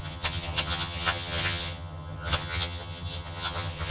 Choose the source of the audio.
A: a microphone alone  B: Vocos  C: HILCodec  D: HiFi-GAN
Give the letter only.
D